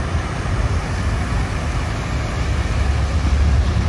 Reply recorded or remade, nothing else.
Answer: recorded